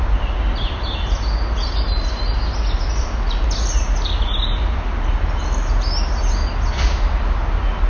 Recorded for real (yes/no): yes